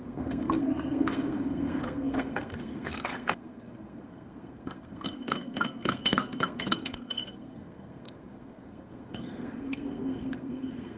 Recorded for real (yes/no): no